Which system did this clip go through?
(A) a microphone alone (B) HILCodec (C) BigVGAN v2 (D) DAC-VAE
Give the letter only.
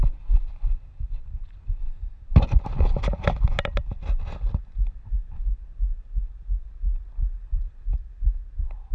A